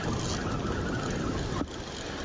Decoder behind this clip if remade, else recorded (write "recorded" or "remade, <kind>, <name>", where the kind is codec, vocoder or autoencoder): recorded